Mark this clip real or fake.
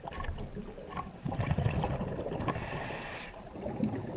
fake